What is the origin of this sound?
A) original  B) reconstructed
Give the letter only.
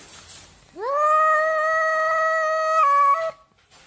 A